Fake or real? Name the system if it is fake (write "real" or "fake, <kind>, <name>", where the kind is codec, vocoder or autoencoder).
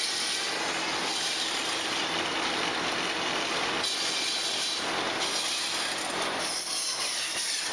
real